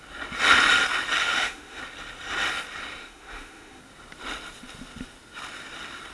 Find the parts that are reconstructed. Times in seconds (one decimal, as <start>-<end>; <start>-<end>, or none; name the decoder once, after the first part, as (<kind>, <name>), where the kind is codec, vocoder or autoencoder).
1.2-1.8 (autoencoder, DAC-VAE); 3.0-3.8